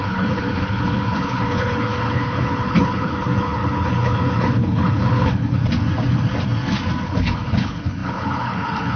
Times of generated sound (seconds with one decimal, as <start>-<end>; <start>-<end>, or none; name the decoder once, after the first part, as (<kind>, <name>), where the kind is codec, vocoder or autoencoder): 0.0-5.6 (codec, HILCodec); 7.0-9.0